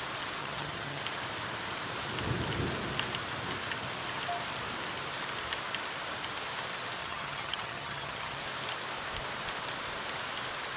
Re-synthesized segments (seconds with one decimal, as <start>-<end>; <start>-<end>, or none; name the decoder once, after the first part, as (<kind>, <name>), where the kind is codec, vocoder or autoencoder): 0.4-1.0 (vocoder, HiFi-GAN); 7.0-8.4